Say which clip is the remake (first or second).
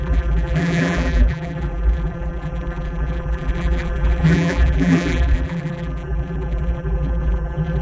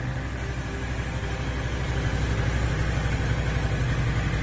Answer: first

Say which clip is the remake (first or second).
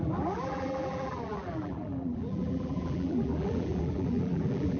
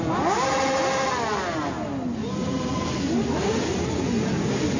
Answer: first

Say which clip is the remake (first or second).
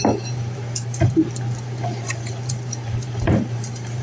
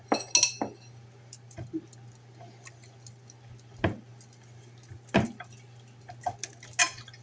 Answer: first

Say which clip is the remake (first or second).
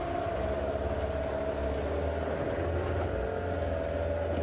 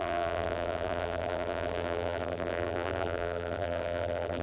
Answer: second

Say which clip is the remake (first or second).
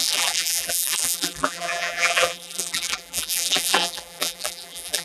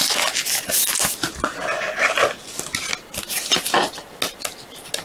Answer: first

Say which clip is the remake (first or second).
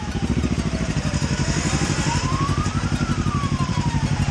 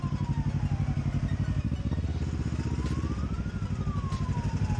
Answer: first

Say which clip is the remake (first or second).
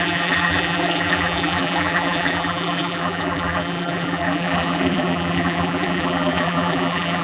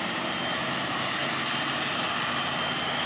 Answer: first